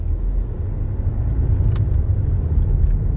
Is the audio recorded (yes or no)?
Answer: yes